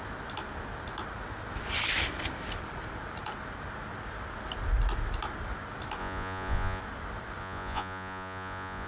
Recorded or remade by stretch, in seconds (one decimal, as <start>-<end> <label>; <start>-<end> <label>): 0.0-6.0 recorded; 6.0-6.8 remade; 6.8-7.4 recorded; 7.4-8.9 remade